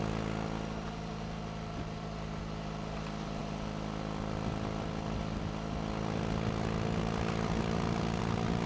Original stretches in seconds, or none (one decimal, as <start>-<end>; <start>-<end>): 0.0-8.7